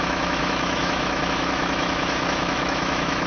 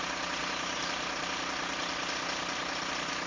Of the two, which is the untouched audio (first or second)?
second